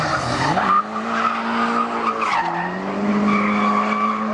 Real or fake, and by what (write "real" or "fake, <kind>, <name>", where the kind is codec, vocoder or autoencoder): real